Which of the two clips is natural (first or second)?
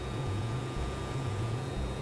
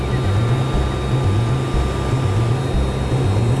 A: second